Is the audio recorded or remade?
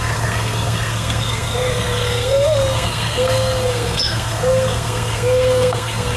remade